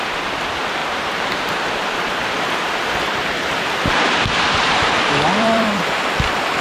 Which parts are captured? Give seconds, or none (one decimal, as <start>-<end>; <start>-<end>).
none